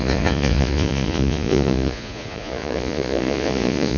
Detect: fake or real fake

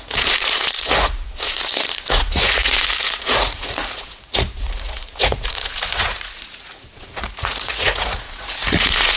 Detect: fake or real fake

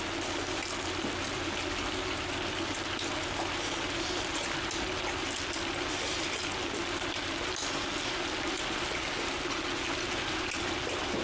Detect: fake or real real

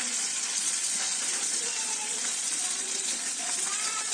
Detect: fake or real fake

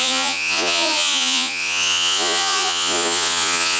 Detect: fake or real fake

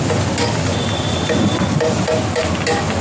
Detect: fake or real real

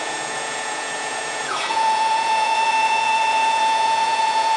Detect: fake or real fake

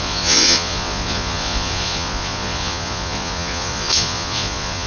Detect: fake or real fake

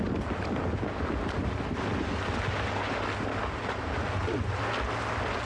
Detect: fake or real real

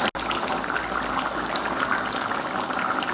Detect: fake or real real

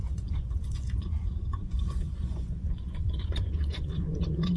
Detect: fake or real fake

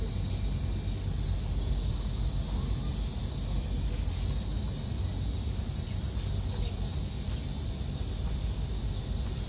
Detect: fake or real real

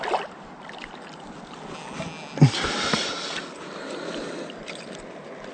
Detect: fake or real real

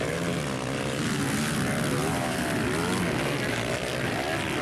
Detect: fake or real real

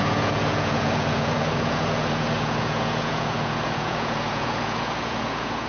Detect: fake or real fake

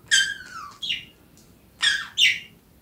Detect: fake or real real